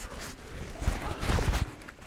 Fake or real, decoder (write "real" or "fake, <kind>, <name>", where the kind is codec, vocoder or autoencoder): real